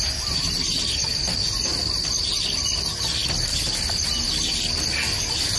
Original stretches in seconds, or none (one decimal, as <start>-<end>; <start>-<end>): 0.0-5.6